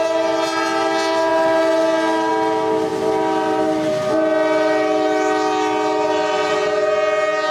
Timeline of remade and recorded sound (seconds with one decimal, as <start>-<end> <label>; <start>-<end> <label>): 0.0-7.5 recorded